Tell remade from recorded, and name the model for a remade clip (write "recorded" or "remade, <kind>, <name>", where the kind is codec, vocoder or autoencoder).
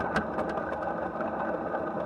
recorded